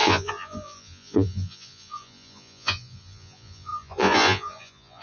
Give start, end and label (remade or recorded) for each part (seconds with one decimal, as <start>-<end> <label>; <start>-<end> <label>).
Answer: 0.0-5.0 remade

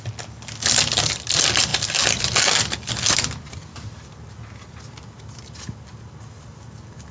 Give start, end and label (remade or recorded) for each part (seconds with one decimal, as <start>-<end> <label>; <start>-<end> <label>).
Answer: 0.0-7.1 recorded

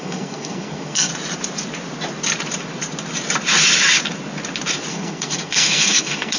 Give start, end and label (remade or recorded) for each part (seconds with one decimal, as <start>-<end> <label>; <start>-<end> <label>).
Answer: 0.0-1.1 remade; 1.1-4.9 recorded; 4.9-6.4 remade

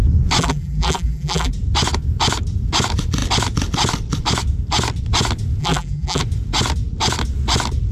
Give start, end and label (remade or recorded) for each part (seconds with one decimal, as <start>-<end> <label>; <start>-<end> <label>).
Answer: 0.0-0.4 recorded; 0.4-1.5 remade; 1.5-5.6 recorded; 5.6-6.2 remade; 6.2-7.9 recorded

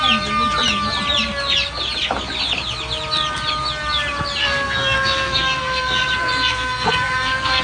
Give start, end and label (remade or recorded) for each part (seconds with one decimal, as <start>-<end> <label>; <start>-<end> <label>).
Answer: 0.0-4.4 recorded; 4.4-7.6 remade